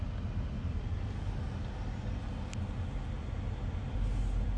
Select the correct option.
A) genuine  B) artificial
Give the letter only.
A